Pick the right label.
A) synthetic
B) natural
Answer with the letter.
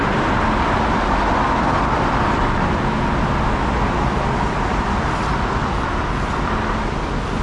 B